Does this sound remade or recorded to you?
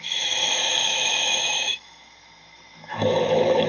remade